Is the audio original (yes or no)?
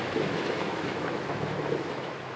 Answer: no